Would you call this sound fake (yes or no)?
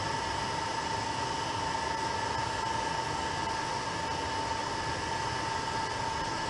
no